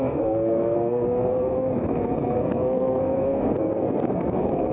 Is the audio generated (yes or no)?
yes